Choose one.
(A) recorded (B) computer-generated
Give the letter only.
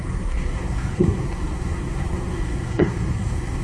B